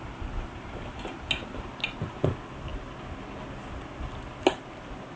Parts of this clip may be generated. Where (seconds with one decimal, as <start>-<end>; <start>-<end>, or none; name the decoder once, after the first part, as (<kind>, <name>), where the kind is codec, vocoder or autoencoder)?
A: none